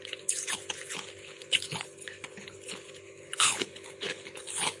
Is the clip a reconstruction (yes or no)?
yes